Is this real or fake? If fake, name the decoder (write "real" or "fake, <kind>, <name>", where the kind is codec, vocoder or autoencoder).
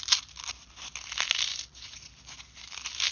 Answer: real